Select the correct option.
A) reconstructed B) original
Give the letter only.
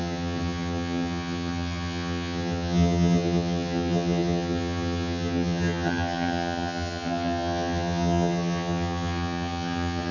A